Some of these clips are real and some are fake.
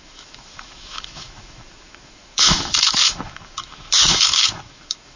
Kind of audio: fake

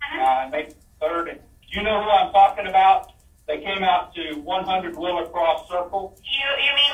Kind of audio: real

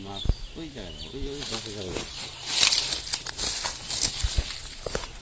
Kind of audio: real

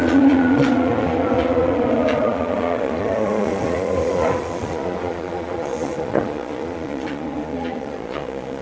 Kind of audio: fake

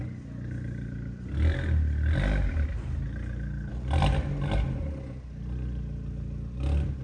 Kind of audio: real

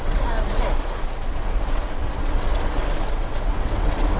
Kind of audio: fake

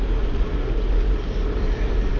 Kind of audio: real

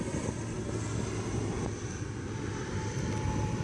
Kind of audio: real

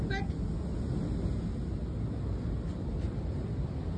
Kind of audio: real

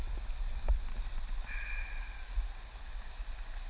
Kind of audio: real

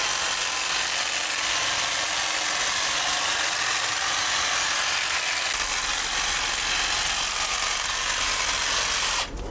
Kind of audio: real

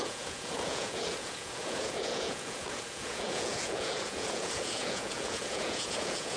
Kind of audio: fake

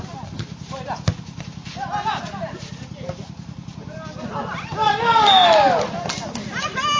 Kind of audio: real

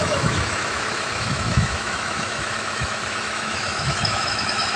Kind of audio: fake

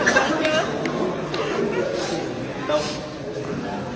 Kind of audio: real